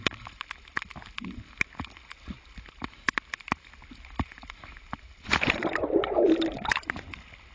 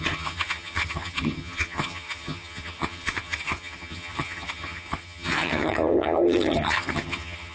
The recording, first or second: first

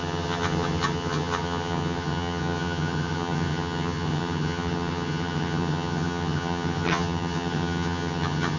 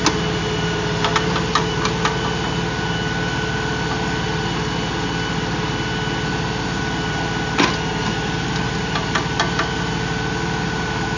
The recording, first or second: second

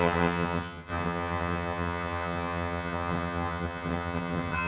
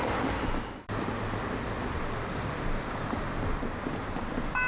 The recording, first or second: second